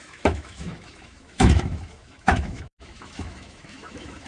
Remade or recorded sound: remade